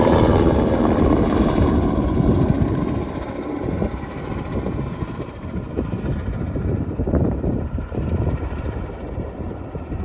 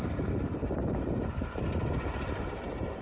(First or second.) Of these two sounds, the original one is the second